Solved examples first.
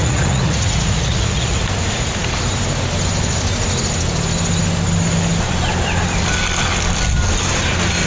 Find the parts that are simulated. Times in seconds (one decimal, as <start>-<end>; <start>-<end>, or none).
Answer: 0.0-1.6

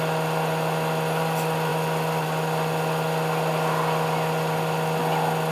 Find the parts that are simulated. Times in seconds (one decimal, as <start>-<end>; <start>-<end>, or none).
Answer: none

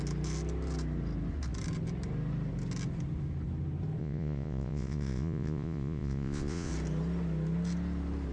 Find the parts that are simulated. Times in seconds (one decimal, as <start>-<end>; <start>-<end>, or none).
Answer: 4.0-6.7

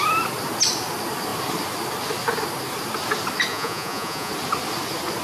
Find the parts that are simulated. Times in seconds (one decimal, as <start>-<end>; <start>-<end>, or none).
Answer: 3.5-4.3

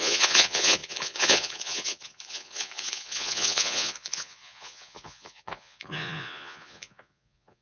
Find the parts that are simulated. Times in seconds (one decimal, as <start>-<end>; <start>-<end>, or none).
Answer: 0.0-7.6

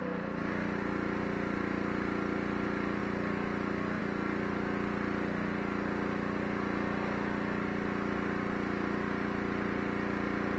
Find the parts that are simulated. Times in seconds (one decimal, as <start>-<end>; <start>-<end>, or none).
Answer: none

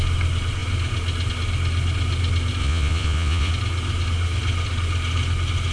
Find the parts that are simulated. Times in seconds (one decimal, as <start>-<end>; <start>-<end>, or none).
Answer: 2.6-3.5